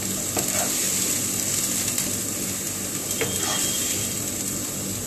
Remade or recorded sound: recorded